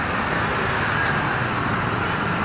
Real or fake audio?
real